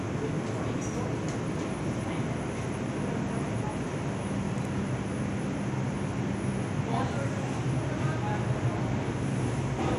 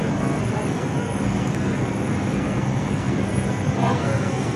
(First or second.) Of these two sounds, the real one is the first